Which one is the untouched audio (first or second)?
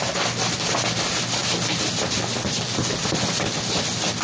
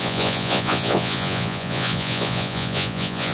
first